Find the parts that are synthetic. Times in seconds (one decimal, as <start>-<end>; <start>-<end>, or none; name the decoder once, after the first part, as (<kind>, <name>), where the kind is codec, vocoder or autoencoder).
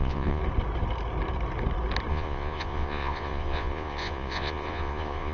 0.0-0.4 (vocoder, Vocos); 2.1-5.3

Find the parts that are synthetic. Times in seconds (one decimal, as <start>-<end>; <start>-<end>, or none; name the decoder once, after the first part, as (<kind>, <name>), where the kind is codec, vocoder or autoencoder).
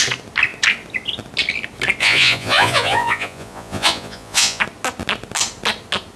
2.0-4.6 (vocoder, Vocos)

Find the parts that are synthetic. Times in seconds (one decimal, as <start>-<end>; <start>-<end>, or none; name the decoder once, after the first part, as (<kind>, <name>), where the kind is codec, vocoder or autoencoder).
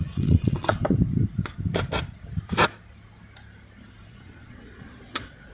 0.0-0.8 (vocoder, Vocos); 4.1-5.5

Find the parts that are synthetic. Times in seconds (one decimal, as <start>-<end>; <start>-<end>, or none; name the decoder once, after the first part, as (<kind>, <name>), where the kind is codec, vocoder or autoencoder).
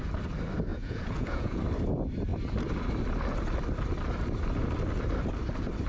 0.7-1.6 (vocoder, Vocos)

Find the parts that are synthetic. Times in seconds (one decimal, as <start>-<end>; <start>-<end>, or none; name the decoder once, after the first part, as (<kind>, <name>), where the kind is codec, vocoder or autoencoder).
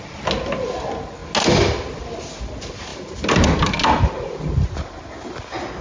none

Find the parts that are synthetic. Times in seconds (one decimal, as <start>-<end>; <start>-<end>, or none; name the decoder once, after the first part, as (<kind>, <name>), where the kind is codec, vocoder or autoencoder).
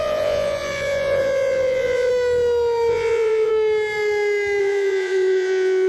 0.0-2.1 (vocoder, Vocos); 2.9-3.5; 4.6-5.9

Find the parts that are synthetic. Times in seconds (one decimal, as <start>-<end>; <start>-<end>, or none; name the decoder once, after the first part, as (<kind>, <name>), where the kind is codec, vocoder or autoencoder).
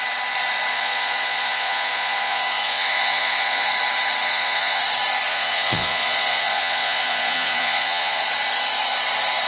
0.7-3.7 (vocoder, Vocos); 4.3-4.8; 5.3-8.2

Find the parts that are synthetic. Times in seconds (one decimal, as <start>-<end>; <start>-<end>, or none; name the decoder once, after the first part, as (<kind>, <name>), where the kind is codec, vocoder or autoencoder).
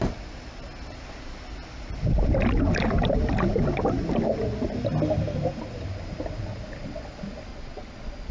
7.5-8.3 (vocoder, Vocos)